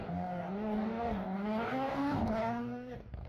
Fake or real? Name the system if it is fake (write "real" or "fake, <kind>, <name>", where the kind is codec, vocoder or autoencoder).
fake, codec, DAC